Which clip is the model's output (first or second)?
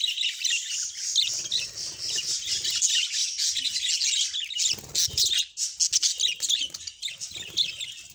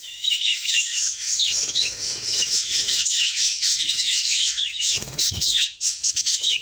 second